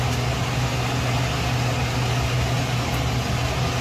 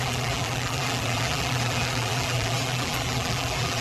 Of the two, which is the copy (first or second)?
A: second